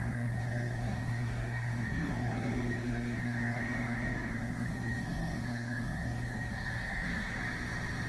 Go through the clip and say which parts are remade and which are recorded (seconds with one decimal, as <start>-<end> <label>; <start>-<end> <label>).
0.0-7.4 remade; 7.4-8.1 recorded